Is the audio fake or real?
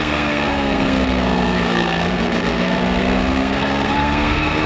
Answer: fake